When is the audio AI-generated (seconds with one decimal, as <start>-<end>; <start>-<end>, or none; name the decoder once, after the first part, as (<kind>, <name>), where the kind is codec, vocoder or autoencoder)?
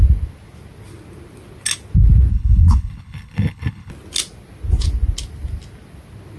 2.3-3.9 (codec, HILCodec)